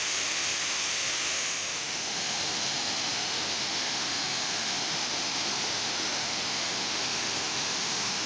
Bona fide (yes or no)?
no